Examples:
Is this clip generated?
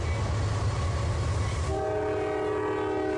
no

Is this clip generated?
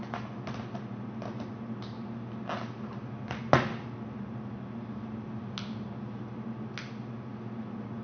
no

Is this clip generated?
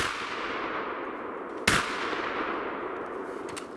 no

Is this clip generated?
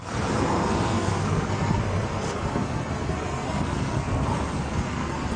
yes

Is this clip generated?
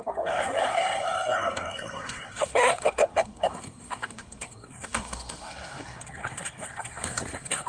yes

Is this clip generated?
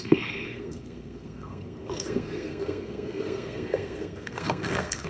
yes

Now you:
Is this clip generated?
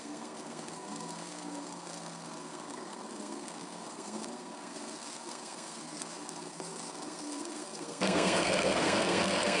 yes